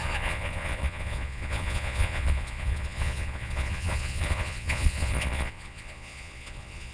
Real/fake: fake